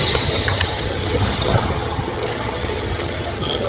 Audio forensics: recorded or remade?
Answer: remade